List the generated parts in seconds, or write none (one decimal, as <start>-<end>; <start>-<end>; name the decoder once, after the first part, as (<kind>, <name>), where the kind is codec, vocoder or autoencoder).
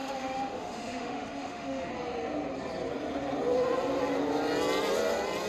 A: 0.0-1.9 (autoencoder, DAC-VAE)